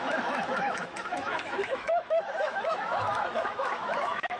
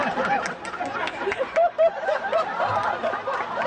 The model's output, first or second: first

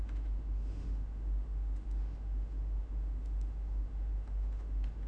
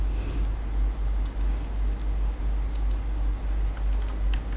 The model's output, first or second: first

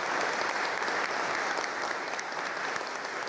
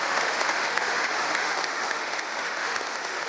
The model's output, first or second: second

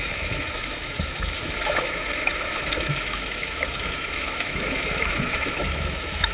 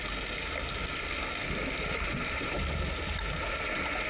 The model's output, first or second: first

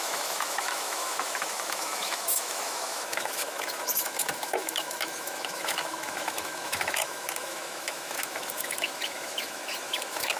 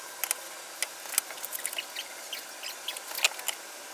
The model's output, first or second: first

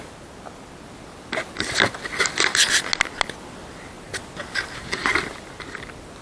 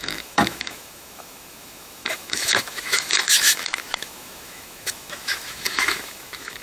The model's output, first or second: second